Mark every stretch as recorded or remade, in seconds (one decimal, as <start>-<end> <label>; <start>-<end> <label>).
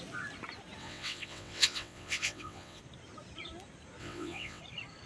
0.0-0.8 recorded; 0.8-2.8 remade; 2.8-4.0 recorded; 4.0-4.6 remade; 4.6-5.1 recorded